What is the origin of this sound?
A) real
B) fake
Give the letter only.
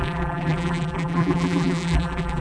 B